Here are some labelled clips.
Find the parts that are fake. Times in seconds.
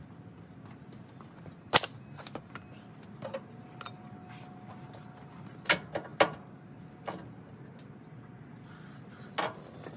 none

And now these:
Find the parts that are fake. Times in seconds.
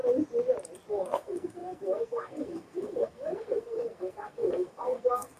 0.9-5.4 (codec, SNAC)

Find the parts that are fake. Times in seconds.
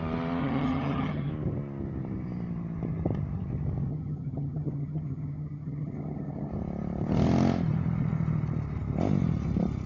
0.4-1.3 (vocoder, HiFi-GAN); 3.9-6.5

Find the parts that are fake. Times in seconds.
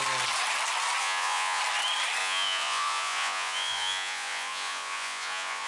1.0-1.6 (vocoder, Vocos); 2.2-5.7